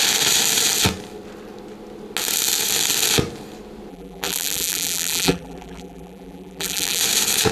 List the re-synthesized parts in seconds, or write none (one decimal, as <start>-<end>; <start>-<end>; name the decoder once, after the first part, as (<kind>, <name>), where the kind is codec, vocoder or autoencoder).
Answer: 3.9-7.0 (vocoder, BigVGAN v2)